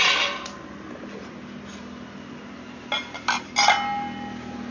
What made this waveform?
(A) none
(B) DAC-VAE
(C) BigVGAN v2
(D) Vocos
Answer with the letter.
A